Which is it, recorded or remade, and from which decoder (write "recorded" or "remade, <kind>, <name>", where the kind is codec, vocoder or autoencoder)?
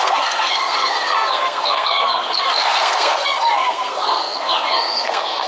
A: remade, codec, SNAC